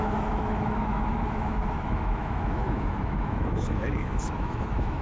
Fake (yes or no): yes